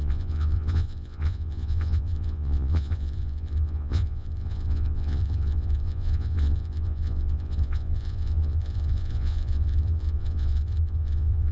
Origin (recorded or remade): remade